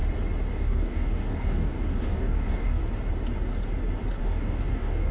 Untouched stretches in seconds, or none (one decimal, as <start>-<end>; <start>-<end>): 0.0-0.5; 2.8-4.2